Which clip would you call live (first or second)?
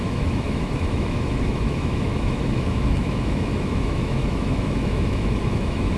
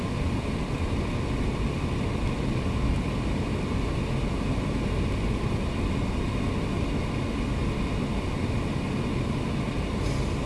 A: second